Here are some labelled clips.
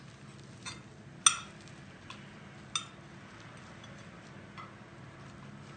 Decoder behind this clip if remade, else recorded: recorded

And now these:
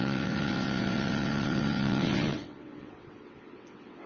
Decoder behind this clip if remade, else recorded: remade, vocoder, WaveNeXt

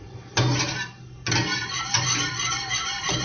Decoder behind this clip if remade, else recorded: recorded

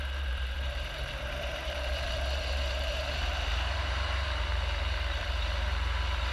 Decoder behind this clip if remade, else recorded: remade, vocoder, BigVGAN v2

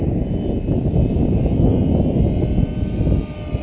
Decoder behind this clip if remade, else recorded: recorded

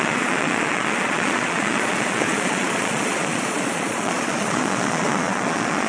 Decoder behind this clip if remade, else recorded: remade, vocoder, Vocos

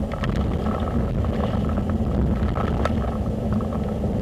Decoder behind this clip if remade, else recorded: recorded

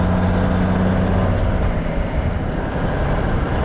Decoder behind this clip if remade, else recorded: recorded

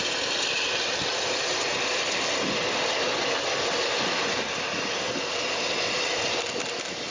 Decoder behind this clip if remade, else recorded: recorded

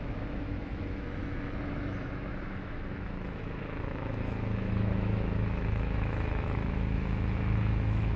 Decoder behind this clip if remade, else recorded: remade, autoencoder, DAC-VAE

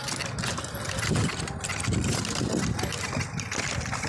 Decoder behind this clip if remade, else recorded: recorded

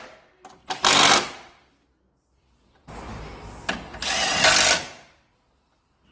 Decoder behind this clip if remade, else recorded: recorded